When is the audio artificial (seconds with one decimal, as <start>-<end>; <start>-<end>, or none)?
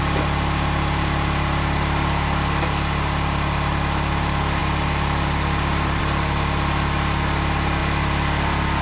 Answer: 4.6-6.0